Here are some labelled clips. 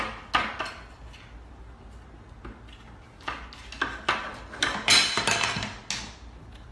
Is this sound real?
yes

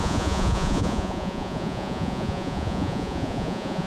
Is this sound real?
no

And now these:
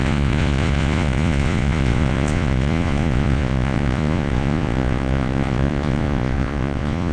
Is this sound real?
no